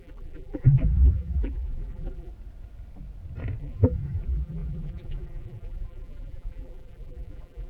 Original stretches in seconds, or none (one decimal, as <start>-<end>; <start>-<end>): 2.3-3.6